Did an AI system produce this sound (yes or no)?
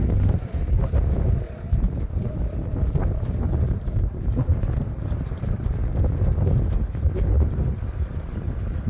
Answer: yes